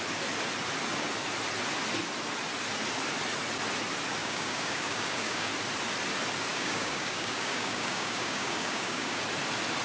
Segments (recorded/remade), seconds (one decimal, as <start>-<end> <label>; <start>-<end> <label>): 0.0-4.2 recorded; 4.2-5.5 remade; 5.5-6.5 recorded; 6.5-9.2 remade; 9.2-9.8 recorded